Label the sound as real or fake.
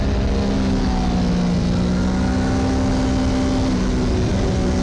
real